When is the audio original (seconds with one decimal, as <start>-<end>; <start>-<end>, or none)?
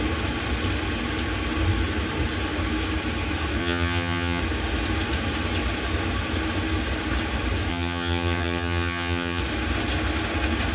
0.0-3.6; 4.4-7.7; 9.4-10.7